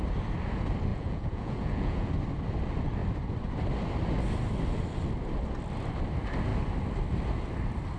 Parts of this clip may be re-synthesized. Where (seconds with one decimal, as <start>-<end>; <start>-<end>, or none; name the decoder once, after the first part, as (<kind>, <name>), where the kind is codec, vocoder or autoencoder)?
0.9-2.1 (vocoder, Vocos)